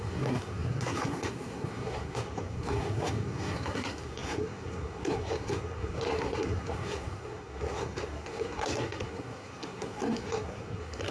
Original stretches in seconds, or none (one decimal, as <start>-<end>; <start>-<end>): none